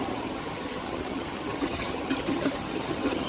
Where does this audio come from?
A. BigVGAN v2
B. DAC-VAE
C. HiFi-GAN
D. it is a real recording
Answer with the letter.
C